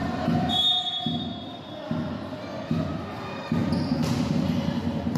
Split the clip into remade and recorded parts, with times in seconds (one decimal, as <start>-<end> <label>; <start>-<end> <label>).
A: 0.0-0.6 remade; 0.6-3.6 recorded; 3.6-5.2 remade

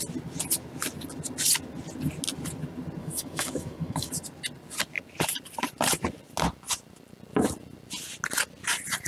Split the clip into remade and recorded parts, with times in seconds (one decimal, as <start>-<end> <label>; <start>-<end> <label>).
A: 0.0-3.0 recorded; 3.0-4.1 remade; 4.1-9.1 recorded

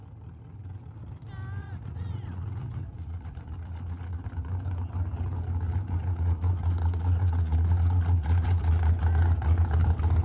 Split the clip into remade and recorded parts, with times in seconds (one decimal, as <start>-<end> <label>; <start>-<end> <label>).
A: 0.0-1.6 recorded; 1.6-4.2 remade; 4.2-6.0 recorded; 6.0-8.7 remade; 8.7-10.2 recorded